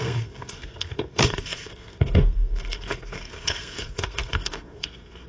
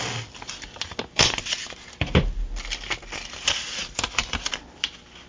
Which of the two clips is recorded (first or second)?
second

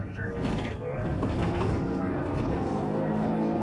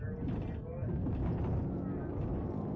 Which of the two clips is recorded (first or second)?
second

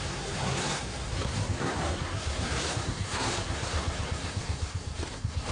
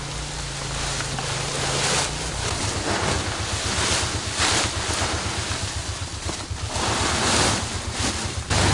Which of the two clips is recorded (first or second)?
second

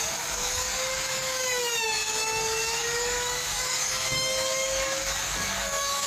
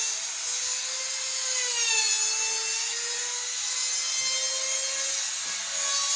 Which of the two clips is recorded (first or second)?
second